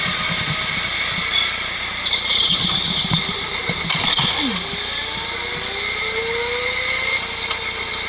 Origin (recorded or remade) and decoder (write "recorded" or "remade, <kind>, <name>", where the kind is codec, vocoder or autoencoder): recorded